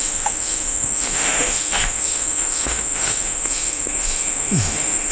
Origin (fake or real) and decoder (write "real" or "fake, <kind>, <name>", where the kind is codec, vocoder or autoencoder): fake, autoencoder, DAC-VAE